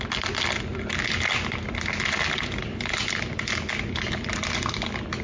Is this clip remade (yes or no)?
no